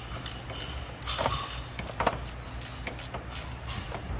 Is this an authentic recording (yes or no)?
yes